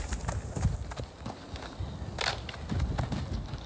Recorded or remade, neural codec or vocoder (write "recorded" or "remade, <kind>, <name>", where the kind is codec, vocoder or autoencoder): recorded